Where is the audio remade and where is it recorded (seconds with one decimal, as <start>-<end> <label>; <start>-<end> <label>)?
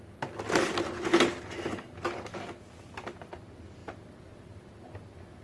0.0-5.4 recorded